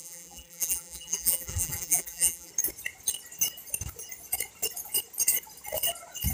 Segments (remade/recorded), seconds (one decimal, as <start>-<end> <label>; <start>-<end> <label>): 0.0-2.5 remade; 2.5-6.3 recorded